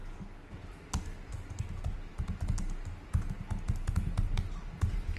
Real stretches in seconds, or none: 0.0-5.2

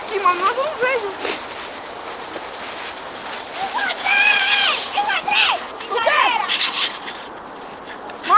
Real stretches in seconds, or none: 0.0-3.8; 7.4-8.4

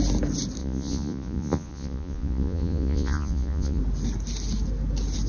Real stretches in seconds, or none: 0.0-0.6; 3.8-5.3